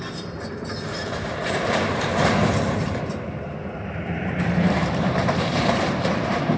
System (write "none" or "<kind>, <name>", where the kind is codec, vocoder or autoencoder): vocoder, BigVGAN v2